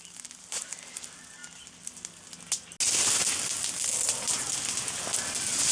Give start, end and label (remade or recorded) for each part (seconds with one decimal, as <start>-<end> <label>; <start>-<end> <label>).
0.0-5.7 recorded